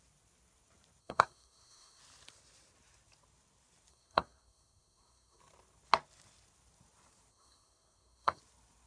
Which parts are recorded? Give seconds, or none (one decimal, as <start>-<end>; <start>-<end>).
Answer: 0.0-1.0; 2.0-3.9; 5.4-7.3; 8.4-8.9